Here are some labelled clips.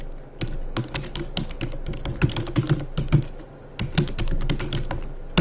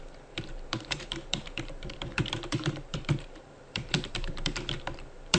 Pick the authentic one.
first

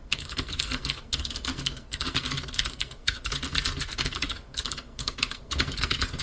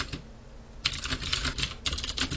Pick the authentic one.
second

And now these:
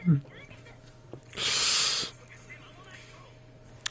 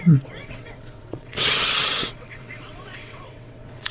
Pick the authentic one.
first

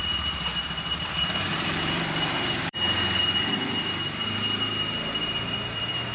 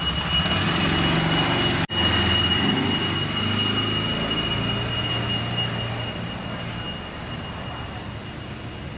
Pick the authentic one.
second